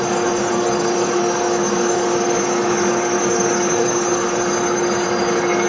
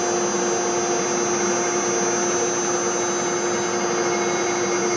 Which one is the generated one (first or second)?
first